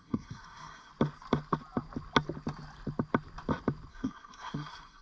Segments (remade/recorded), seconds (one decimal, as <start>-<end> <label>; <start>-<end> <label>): 0.0-0.9 remade; 0.9-3.9 recorded; 3.9-5.0 remade